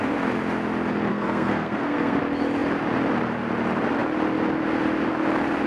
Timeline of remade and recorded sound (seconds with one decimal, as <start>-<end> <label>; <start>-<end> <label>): 0.0-1.1 recorded; 1.1-2.2 remade; 2.2-5.7 recorded